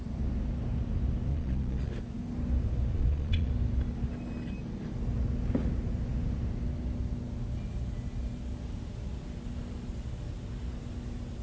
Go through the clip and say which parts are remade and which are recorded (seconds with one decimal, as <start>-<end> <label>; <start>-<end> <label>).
0.0-1.3 recorded; 1.3-1.9 remade; 1.9-2.9 recorded; 2.9-3.5 remade; 3.5-11.4 recorded